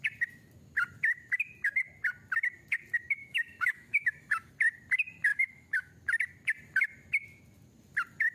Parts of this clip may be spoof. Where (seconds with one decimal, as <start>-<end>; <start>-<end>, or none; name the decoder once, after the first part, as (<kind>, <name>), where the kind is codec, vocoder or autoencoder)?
3.2-4.5 (autoencoder, DAC-VAE); 5.3-5.9